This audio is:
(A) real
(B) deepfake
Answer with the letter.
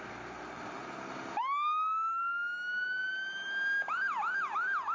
A